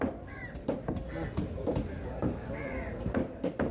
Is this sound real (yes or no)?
yes